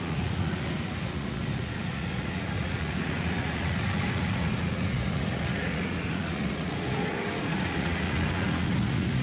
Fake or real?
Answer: fake